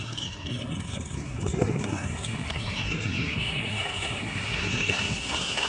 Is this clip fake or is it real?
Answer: fake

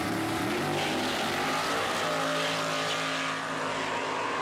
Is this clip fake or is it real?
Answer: real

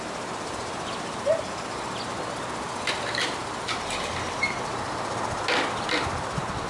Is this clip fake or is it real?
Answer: real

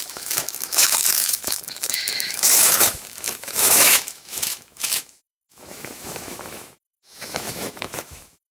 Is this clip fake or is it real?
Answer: fake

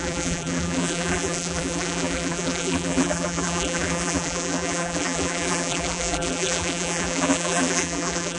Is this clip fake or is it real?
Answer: fake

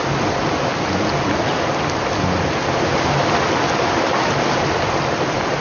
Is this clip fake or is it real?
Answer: real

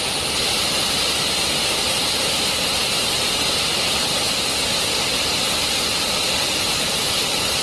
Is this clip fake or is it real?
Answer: real